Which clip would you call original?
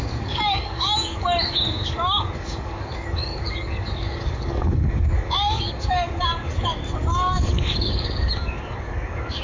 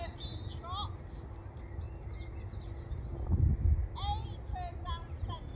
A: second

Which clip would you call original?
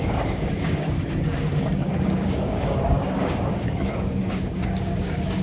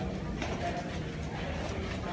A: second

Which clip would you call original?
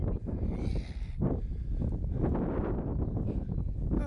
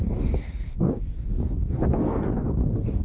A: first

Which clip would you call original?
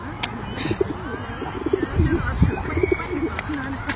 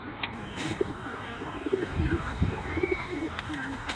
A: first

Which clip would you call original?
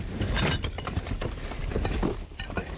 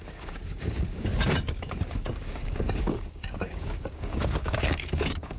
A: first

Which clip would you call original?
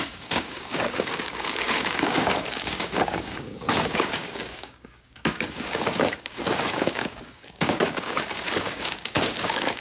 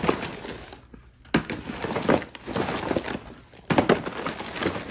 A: second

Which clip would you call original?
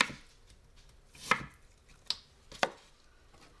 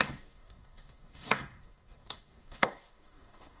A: first